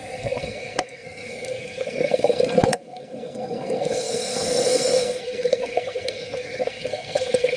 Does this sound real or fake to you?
fake